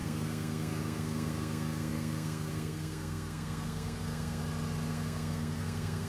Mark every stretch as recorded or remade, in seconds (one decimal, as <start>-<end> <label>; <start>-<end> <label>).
0.0-4.4 remade; 4.4-4.9 recorded; 4.9-6.1 remade